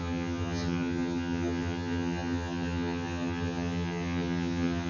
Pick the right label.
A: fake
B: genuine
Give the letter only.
A